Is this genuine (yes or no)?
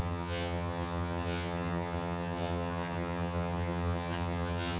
no